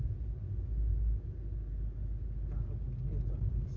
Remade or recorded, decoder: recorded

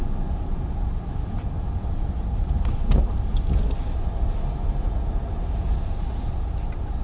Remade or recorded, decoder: recorded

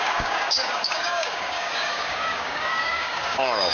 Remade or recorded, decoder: remade, codec, DAC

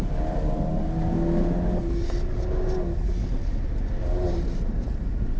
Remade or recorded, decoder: recorded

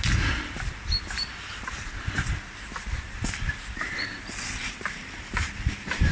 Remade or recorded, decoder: recorded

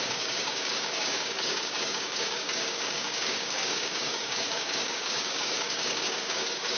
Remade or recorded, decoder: remade, codec, DAC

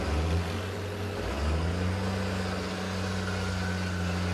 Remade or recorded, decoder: recorded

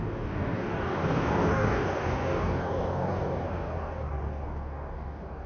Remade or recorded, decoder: remade, codec, DAC